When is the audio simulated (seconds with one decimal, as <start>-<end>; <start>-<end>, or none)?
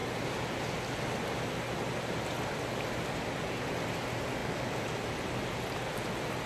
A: none